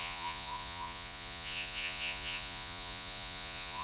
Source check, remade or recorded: remade